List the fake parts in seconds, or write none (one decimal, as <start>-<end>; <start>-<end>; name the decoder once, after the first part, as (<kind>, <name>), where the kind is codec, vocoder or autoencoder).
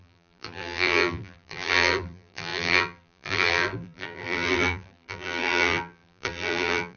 0.0-7.0 (vocoder, BigVGAN v2)